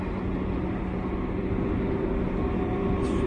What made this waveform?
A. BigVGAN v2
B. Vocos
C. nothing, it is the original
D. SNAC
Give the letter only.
C